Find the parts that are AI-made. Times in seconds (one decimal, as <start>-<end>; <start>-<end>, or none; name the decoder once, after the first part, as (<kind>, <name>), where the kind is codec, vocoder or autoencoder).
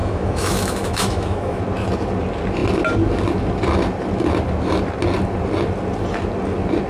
0.0-1.6 (autoencoder, DAC-VAE)